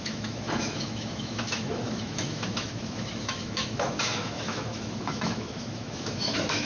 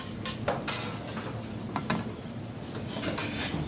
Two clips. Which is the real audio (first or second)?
second